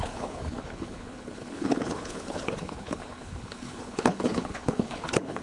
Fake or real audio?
fake